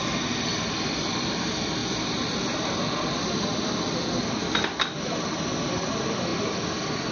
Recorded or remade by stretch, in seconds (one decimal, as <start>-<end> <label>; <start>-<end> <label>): 0.0-7.1 recorded